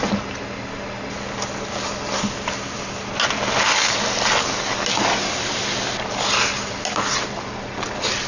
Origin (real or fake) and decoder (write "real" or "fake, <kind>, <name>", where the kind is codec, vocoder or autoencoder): real